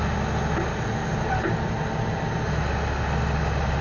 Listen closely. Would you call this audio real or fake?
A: real